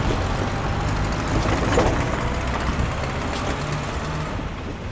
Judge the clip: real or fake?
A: real